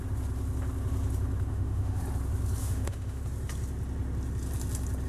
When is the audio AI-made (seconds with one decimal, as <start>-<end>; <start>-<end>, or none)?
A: 1.5-2.0; 2.6-3.2